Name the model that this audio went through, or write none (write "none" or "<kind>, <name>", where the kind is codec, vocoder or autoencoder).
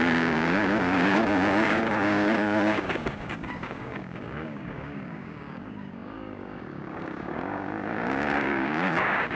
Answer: codec, DAC